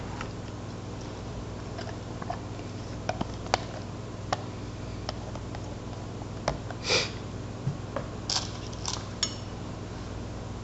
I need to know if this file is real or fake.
real